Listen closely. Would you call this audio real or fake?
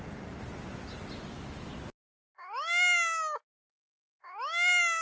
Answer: real